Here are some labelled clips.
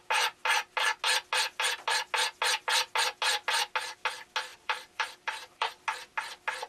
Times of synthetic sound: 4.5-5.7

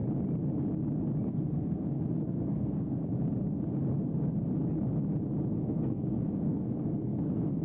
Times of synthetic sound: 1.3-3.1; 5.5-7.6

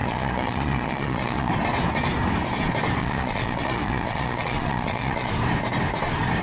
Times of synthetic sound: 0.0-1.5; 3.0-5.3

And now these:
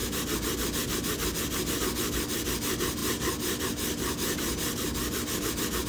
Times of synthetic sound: none